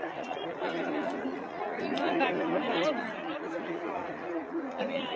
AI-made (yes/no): yes